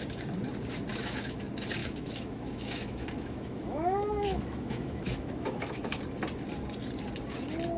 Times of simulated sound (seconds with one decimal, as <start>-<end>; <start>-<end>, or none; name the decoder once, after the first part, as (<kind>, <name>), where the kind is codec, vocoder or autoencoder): 0.9-1.4 (autoencoder, DAC-VAE); 1.8-6.0